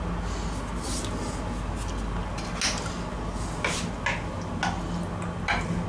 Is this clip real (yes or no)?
yes